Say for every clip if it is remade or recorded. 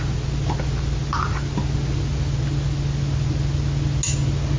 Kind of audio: recorded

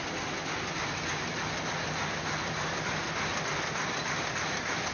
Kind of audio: recorded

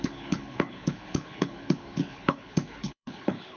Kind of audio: remade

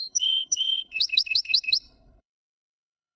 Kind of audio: remade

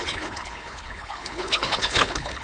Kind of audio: remade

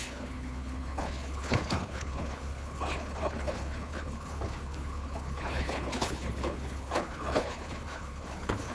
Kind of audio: remade